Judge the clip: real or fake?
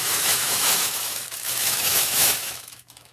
fake